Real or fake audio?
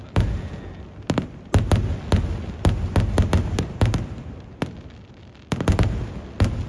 real